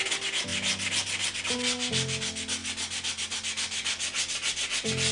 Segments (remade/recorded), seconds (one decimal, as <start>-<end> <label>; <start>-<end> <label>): 0.0-5.1 recorded